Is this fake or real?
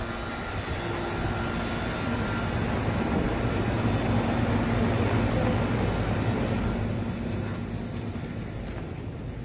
real